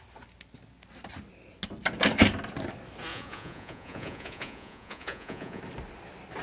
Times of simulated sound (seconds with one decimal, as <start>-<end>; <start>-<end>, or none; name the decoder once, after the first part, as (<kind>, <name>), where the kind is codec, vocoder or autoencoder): 3.1-5.6 (vocoder, Vocos)